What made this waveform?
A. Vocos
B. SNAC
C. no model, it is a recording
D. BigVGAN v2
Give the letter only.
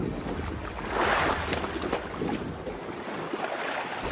C